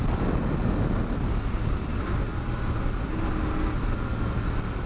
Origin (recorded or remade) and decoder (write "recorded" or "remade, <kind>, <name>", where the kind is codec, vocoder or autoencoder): recorded